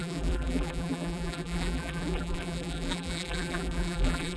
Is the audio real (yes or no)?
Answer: no